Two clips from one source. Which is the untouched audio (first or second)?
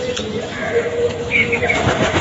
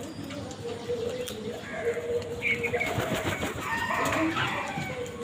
second